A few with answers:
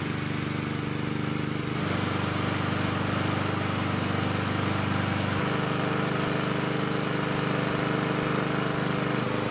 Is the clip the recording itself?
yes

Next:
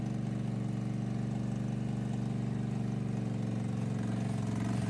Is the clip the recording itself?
yes